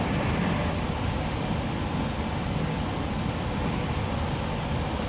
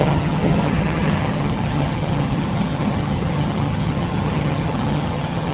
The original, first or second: first